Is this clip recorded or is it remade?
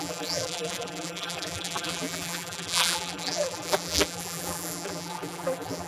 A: remade